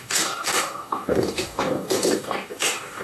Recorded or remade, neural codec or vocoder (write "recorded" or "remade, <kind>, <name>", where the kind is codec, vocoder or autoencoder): remade, codec, DAC